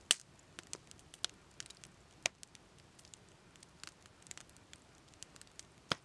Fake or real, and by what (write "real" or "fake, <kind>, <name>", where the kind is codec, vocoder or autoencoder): real